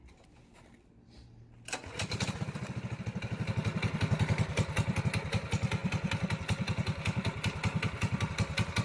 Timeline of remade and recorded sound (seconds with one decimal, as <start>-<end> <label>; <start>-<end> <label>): 0.0-8.8 recorded